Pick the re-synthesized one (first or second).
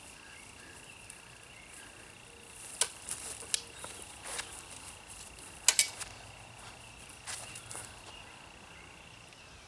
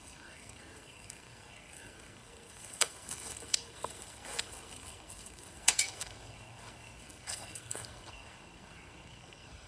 second